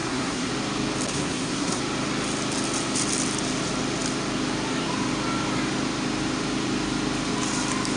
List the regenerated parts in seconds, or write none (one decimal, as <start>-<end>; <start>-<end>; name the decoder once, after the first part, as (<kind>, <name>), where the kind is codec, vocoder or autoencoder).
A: 0.0-0.5 (codec, SNAC); 1.1-1.8